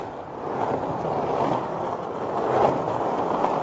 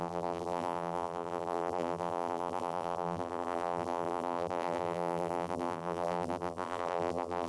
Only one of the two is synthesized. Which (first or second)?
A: second